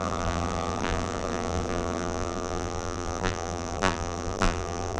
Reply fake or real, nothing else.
fake